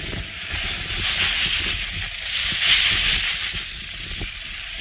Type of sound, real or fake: real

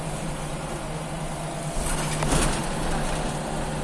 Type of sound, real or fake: real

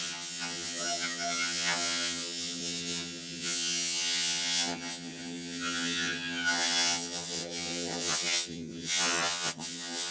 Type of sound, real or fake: fake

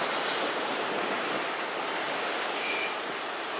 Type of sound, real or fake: real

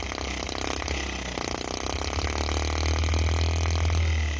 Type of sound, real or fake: real